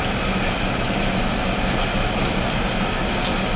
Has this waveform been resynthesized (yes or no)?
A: no